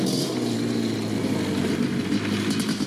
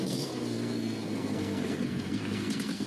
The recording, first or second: first